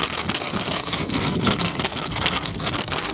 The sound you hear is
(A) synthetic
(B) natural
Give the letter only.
A